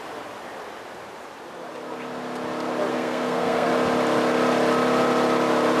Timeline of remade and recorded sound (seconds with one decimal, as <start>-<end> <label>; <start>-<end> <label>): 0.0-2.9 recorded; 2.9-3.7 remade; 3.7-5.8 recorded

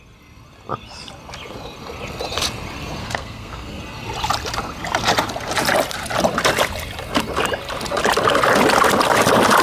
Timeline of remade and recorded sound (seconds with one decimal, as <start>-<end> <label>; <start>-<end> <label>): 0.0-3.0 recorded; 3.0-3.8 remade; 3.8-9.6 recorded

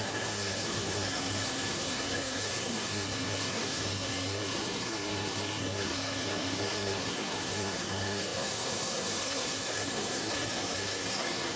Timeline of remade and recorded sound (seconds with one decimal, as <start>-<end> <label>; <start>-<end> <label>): 0.0-11.6 remade

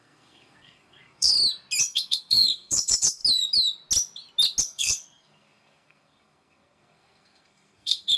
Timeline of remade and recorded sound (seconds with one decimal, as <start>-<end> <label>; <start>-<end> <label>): 0.0-1.3 remade; 1.3-1.8 recorded; 1.8-3.2 remade; 3.2-4.6 recorded; 4.6-8.2 remade